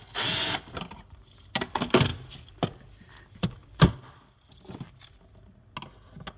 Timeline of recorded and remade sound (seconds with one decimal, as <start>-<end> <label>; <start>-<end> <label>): 0.0-6.4 recorded